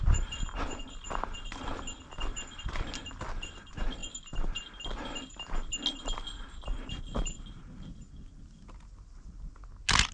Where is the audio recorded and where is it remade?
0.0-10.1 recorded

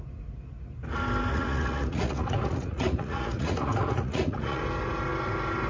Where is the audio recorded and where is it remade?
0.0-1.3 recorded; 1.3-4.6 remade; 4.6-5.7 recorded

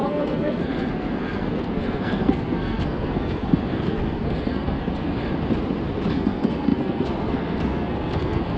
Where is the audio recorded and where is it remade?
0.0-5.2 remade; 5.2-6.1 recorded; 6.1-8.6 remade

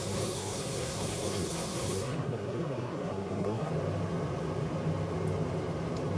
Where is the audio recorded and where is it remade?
0.0-3.7 remade; 3.7-6.2 recorded